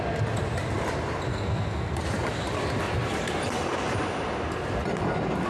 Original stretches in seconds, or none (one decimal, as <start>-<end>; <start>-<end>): 0.0-1.3; 2.0-5.5